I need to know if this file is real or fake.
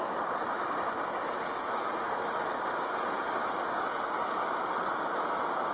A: real